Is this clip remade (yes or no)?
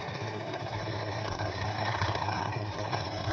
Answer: yes